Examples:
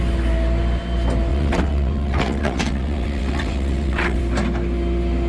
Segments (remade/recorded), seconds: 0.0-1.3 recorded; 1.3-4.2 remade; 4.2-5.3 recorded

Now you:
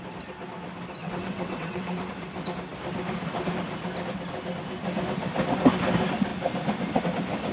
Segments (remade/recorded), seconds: 0.0-1.0 recorded; 1.0-1.9 remade; 1.9-7.5 recorded

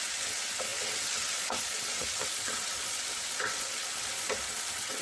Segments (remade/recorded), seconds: 0.0-5.0 remade

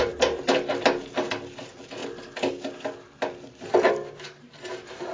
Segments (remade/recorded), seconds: 0.0-5.1 recorded